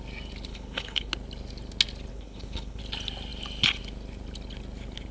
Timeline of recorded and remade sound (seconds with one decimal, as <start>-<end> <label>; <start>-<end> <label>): 0.0-0.5 recorded; 0.5-1.1 remade; 1.1-2.1 recorded; 2.1-2.8 remade; 2.8-5.1 recorded